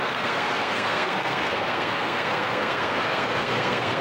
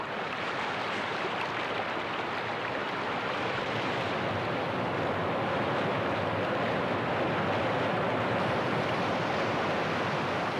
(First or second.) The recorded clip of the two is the second